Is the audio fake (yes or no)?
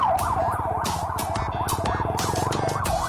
no